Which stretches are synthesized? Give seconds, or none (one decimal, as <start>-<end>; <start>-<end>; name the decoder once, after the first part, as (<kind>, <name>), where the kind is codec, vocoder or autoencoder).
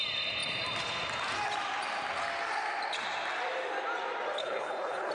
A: 4.4-5.1 (codec, HILCodec)